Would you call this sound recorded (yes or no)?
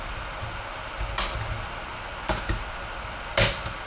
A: yes